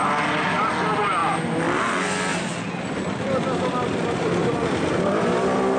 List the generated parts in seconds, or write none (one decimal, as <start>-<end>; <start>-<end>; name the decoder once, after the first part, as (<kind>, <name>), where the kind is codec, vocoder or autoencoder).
none